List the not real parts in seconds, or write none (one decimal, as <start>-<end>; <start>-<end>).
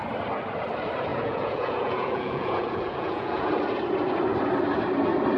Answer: 1.1-3.5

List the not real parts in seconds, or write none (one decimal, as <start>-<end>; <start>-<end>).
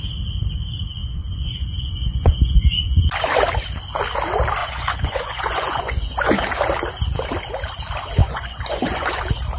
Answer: 1.0-3.1; 4.6-6.4; 8.2-9.2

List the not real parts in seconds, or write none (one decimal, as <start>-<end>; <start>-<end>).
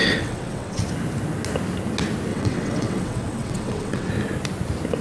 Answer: 0.0-0.8; 2.3-4.1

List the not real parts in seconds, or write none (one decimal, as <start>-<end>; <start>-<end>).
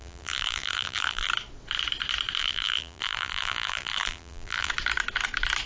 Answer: 0.0-1.3; 2.4-4.7